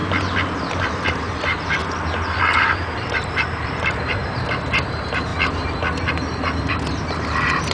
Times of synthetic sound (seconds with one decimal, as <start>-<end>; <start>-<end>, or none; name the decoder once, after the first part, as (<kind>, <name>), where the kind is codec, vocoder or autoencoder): 1.3-1.8 (vocoder, BigVGAN v2); 2.4-5.3; 6.1-7.7